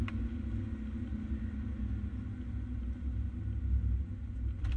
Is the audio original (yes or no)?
yes